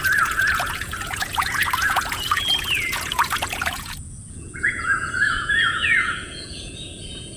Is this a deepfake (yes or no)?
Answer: yes